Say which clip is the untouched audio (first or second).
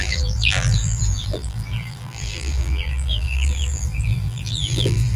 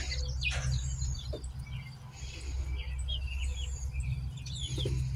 second